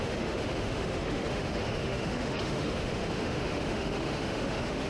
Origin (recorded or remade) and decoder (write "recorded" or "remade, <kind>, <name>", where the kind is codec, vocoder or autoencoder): remade, autoencoder, DAC-VAE